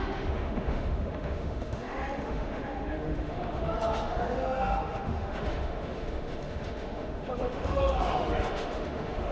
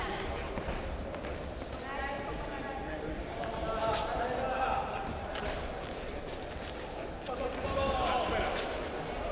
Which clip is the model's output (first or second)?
first